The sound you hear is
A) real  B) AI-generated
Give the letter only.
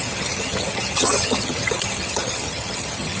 B